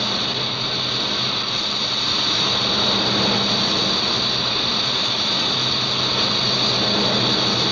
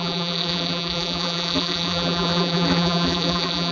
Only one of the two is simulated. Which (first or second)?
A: second